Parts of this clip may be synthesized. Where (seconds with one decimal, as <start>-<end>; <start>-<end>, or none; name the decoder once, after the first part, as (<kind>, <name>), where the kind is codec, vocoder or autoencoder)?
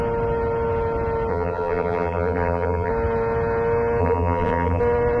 1.3-2.9 (vocoder, BigVGAN v2); 4.0-4.8